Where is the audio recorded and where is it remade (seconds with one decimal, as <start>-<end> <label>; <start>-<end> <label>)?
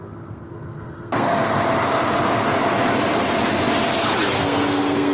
0.0-1.3 remade; 1.3-4.4 recorded; 4.4-5.1 remade